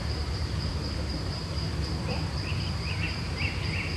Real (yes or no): no